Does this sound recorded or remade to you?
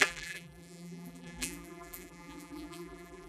remade